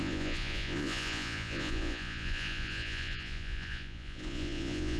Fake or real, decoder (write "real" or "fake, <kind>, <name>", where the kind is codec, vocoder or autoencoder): fake, vocoder, Vocos